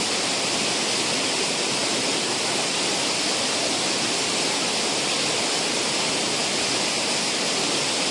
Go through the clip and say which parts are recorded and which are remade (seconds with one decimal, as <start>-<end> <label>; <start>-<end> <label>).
0.0-8.1 recorded